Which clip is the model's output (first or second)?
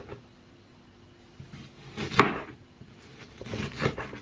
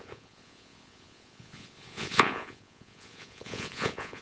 second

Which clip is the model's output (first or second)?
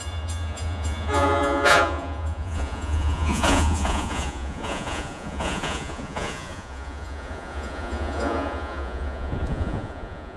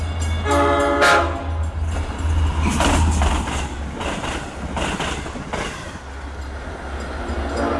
first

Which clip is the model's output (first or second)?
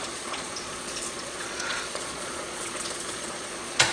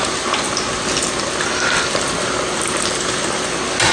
first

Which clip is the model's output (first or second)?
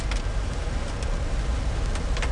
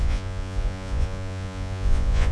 second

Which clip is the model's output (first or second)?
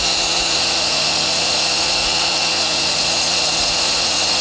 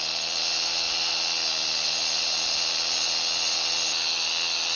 first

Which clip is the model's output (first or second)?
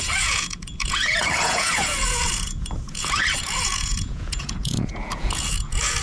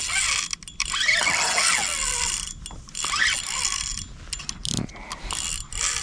first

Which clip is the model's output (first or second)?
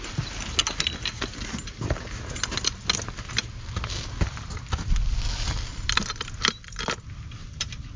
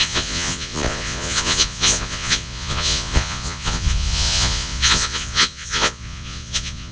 second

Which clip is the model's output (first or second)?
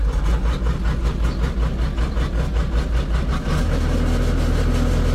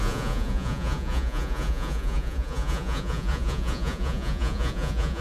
second